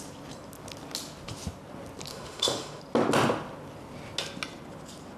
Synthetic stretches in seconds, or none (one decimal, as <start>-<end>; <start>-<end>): 2.1-2.8